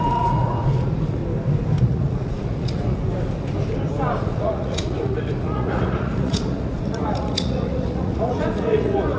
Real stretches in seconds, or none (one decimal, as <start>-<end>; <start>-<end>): 1.2-1.8; 3.0-4.2